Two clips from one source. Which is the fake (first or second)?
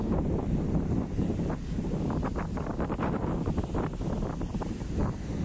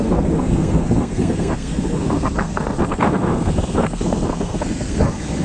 second